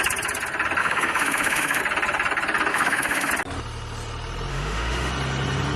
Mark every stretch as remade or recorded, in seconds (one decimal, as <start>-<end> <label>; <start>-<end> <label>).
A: 0.0-0.8 recorded; 0.8-1.8 remade; 1.8-2.7 recorded; 2.7-3.3 remade; 3.3-4.5 recorded; 4.5-5.1 remade; 5.1-5.8 recorded

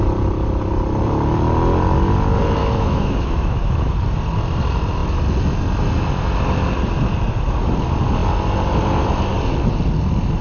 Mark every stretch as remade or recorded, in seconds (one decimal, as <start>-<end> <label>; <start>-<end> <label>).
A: 0.0-2.6 recorded; 2.6-3.9 remade; 3.9-10.4 recorded

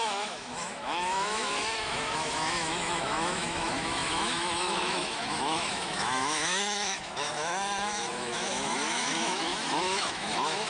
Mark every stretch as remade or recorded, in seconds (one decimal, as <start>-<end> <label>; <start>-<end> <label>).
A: 0.0-10.7 remade

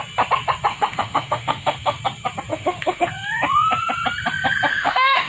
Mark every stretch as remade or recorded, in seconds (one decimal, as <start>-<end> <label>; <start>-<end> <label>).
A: 0.0-0.7 recorded; 0.7-2.0 remade; 2.0-2.5 recorded; 2.5-3.1 remade; 3.1-4.7 recorded; 4.7-5.3 remade

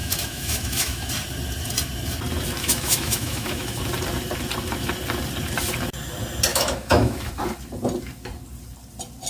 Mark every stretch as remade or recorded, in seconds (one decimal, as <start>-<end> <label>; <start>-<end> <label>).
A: 0.0-1.1 remade; 1.1-2.6 recorded; 2.6-3.8 remade; 3.8-6.5 recorded; 6.5-7.3 remade; 7.3-9.3 recorded

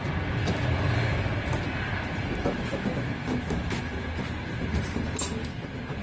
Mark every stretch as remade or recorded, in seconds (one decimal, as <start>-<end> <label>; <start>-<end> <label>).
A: 0.0-2.7 recorded; 2.7-3.8 remade; 3.8-6.0 recorded